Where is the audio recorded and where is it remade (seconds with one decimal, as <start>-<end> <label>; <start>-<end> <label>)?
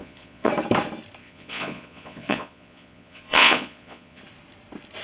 0.0-0.5 remade; 0.5-1.2 recorded; 1.2-4.2 remade; 4.2-5.0 recorded